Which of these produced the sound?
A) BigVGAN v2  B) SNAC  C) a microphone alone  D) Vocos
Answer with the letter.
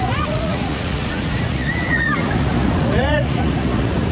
D